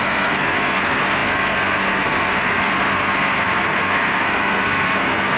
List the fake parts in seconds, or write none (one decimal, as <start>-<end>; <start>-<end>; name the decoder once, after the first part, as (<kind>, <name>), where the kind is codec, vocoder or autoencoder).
0.0-5.4 (codec, SNAC)